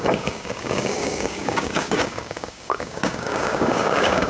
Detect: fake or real fake